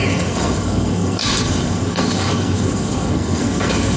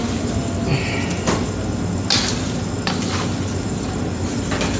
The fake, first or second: first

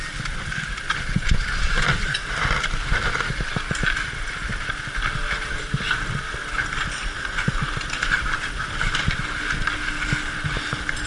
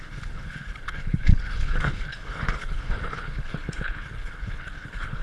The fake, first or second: second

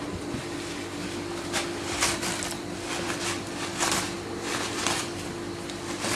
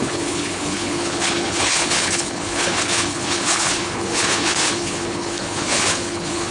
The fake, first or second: second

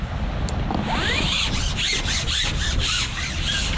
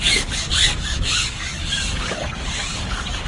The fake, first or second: second